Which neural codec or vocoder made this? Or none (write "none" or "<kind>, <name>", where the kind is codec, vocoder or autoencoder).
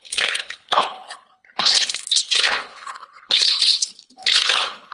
codec, HILCodec